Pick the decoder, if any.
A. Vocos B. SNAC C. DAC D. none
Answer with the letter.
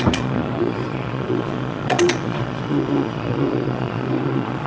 A